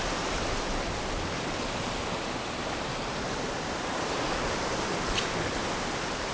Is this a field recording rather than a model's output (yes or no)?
yes